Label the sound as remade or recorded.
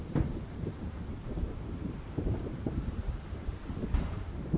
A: remade